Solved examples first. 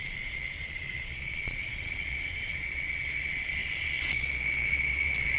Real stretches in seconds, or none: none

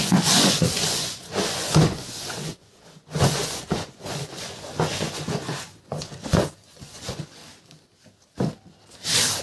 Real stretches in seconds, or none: 7.4-9.4

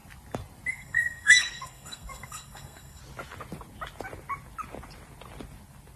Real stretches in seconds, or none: 0.0-0.7; 3.0-6.0

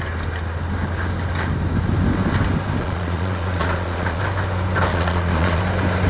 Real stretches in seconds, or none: 0.0-2.8; 4.2-4.9; 5.6-6.1